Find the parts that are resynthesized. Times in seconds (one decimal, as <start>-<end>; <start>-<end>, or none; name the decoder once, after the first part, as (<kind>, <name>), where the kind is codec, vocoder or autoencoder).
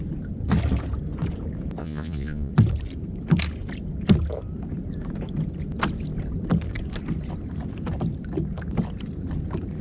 1.8-2.5 (vocoder, Vocos)